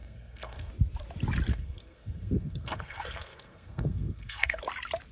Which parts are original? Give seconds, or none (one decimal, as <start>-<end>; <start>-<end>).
0.7-1.5; 4.6-5.1